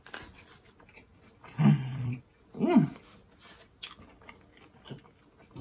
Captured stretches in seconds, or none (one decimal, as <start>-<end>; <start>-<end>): 0.0-1.9; 3.0-5.6